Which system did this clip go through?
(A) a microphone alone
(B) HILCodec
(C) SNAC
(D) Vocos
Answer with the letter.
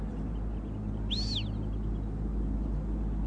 A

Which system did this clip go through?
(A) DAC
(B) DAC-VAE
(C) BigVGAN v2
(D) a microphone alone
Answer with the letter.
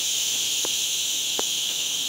B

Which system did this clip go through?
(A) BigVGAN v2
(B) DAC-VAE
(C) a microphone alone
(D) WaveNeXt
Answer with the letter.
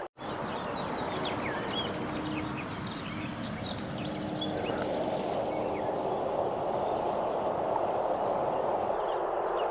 C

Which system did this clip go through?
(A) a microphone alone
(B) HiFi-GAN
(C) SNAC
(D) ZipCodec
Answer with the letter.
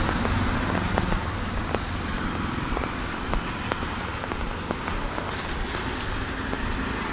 A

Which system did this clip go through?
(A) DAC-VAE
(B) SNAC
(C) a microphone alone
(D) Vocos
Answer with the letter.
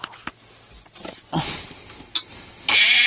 C